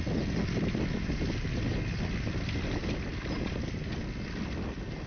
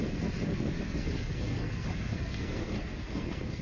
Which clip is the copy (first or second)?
second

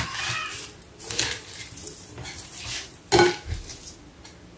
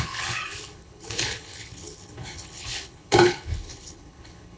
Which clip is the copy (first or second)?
second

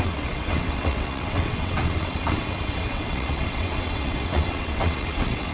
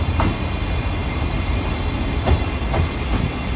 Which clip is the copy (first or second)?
first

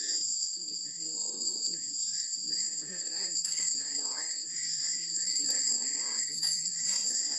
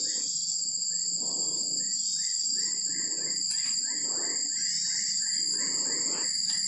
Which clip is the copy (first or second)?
first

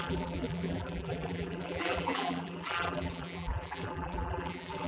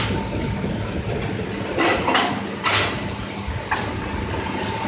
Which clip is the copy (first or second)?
first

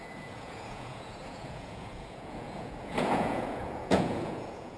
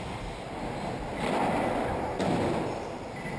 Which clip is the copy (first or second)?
first